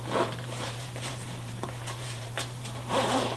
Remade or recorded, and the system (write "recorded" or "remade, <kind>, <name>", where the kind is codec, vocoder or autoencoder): remade, vocoder, BigVGAN v2